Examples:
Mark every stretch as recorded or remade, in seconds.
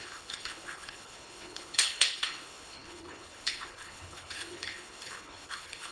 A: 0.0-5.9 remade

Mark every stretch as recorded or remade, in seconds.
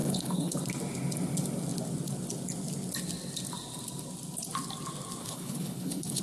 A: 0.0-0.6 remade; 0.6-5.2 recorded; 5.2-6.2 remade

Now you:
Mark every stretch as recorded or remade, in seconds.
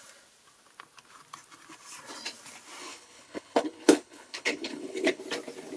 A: 0.0-2.8 recorded; 2.8-5.2 remade; 5.2-5.8 recorded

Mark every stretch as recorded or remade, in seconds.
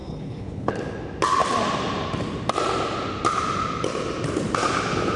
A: 0.0-0.7 remade; 0.7-5.2 recorded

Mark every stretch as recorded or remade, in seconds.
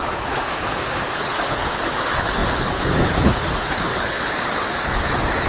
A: 0.0-5.5 remade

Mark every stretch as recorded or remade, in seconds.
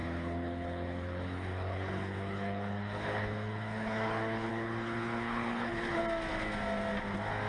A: 0.0-6.0 remade; 6.0-7.5 recorded